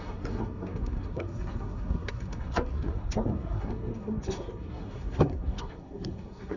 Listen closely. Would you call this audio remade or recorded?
remade